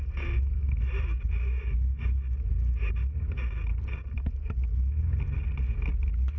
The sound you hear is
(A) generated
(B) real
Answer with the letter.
B